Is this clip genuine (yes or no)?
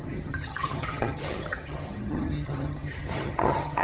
no